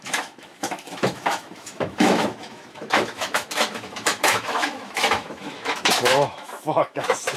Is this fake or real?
fake